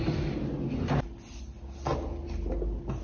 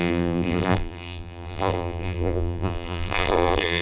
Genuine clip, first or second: first